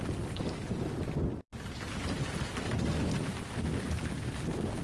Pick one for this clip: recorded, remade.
recorded